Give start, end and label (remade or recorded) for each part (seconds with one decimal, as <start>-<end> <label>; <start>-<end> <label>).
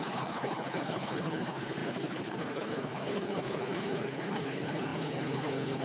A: 0.0-5.8 remade